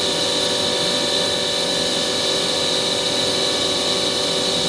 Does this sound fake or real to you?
real